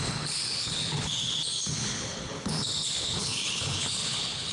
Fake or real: fake